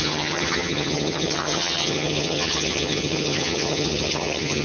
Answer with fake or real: fake